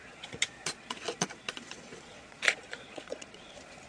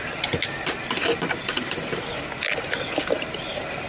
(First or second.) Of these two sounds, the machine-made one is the first